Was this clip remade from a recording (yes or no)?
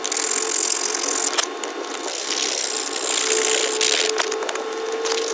no